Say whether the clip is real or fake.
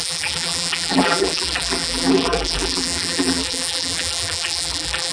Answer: fake